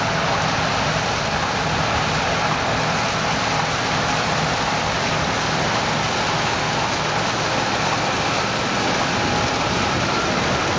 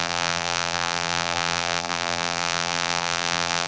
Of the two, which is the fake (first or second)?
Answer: second